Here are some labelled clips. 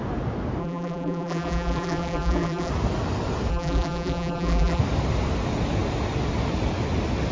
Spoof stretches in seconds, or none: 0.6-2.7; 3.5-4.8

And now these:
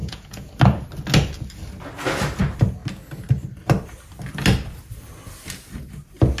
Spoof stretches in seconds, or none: 0.0-0.5

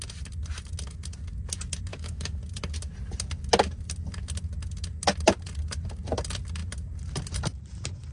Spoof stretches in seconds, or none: 1.9-2.4

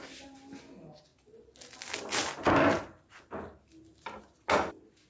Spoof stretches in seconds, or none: none